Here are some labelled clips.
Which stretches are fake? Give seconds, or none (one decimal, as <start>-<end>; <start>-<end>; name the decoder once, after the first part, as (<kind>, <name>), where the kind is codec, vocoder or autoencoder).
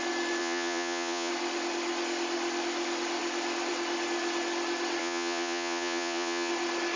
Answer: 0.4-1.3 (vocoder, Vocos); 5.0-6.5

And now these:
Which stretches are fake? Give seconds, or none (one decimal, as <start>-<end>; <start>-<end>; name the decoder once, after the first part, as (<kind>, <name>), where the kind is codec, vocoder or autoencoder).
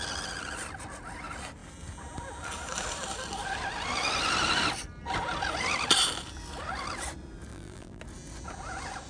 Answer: 7.5-8.0 (vocoder, BigVGAN v2)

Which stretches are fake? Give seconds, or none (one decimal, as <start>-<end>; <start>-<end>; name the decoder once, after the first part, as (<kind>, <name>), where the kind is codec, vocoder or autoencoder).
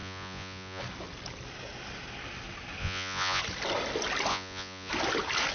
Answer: 0.0-0.8 (vocoder, Vocos); 2.8-3.4; 4.3-4.9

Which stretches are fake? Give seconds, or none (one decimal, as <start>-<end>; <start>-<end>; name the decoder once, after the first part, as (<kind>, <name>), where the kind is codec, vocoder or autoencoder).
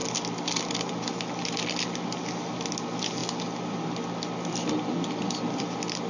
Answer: none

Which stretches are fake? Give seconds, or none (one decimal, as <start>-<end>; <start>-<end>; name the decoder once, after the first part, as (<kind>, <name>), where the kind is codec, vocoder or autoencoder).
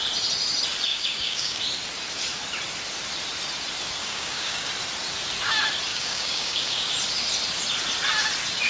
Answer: 0.9-1.6 (codec, DAC); 4.0-4.7; 5.9-6.9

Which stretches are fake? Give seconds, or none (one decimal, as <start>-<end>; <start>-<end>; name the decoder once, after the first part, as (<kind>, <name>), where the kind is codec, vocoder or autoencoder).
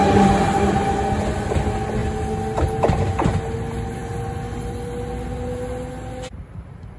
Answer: 0.0-0.9 (vocoder, BigVGAN v2)